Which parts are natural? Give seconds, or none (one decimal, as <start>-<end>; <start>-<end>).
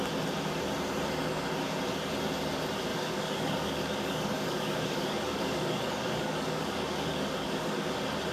0.0-2.9; 7.9-8.3